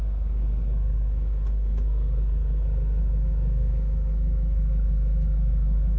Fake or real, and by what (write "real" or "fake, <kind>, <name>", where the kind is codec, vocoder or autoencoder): fake, codec, SNAC